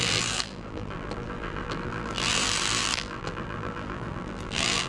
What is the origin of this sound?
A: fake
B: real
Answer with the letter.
A